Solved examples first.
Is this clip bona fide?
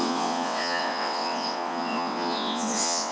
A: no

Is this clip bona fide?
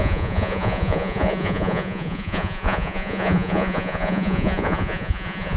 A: no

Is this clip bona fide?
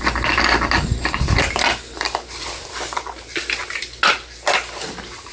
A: yes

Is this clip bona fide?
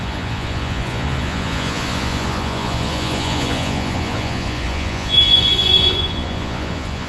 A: no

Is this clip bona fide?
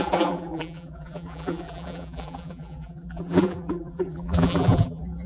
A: no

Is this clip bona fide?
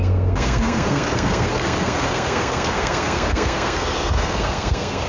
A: no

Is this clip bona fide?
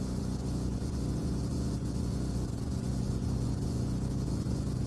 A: no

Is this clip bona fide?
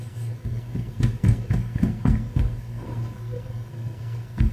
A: no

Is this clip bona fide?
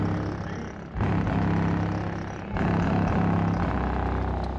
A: yes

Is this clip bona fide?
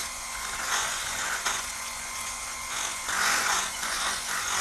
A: no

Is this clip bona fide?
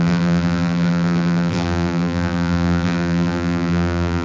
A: no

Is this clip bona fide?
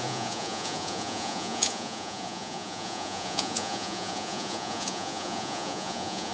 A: no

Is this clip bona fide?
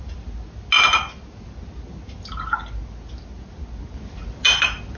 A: yes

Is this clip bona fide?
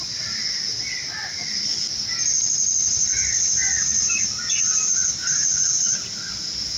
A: yes